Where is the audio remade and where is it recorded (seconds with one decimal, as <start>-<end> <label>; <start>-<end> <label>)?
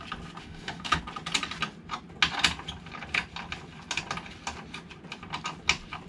0.0-0.4 recorded; 0.4-1.0 remade; 1.0-6.1 recorded